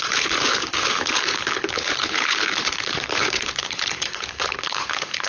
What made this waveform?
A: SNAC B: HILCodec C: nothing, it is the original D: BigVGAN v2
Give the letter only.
B